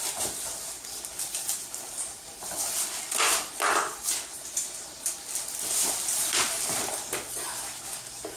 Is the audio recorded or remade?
recorded